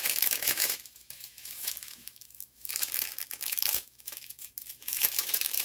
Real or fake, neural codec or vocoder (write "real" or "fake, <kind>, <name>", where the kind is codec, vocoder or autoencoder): fake, autoencoder, DAC-VAE